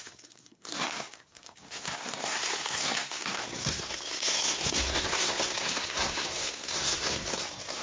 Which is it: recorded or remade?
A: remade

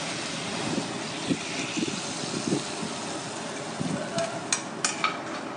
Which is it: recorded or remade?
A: recorded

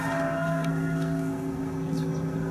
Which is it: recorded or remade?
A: remade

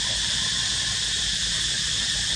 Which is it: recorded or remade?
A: recorded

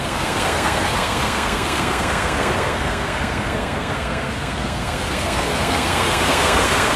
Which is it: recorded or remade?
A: remade